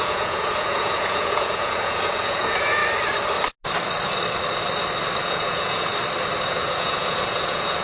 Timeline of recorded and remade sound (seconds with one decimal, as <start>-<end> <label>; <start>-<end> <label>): 0.0-2.8 remade; 2.8-5.2 recorded; 5.2-5.9 remade; 5.9-6.4 recorded; 6.4-7.8 remade